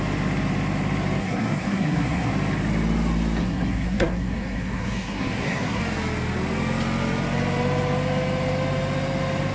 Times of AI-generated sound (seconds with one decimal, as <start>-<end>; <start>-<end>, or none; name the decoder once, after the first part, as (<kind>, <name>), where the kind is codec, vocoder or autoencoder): 1.2-2.3 (codec, SNAC); 3.4-5.8